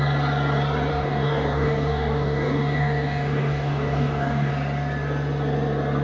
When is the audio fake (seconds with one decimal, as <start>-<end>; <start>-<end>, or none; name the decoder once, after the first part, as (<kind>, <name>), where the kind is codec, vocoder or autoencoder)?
0.9-4.5 (codec, DAC)